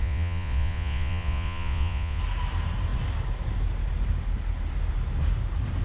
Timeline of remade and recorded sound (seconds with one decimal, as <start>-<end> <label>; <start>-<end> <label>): 0.0-2.2 remade; 2.2-5.8 recorded